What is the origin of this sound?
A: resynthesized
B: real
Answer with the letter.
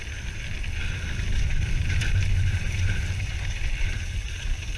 A